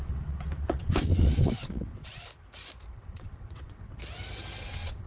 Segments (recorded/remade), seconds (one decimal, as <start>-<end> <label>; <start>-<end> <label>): 0.0-2.3 remade; 2.3-2.9 recorded; 2.9-4.0 remade; 4.0-4.6 recorded; 4.6-5.1 remade